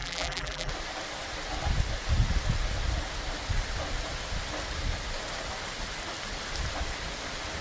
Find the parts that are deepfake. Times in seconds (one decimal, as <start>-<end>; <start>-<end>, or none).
0.0-0.7